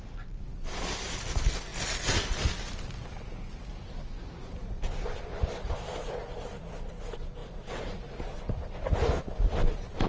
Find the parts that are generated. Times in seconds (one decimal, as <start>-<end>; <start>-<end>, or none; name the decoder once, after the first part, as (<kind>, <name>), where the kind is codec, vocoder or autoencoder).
none